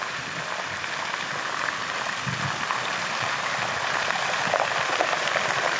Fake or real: real